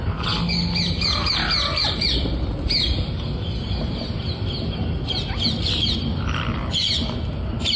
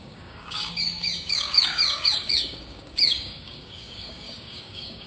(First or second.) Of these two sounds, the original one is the first